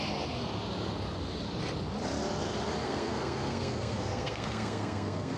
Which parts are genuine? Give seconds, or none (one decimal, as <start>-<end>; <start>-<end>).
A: 0.0-2.8